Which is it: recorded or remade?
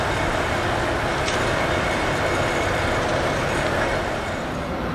recorded